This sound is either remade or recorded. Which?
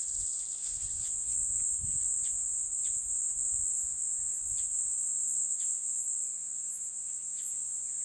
remade